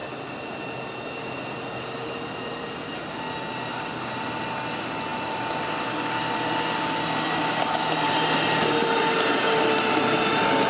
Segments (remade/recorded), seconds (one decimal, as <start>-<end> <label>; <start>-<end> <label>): 0.0-10.7 recorded